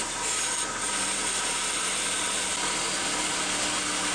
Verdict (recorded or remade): recorded